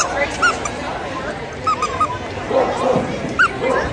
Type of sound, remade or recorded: recorded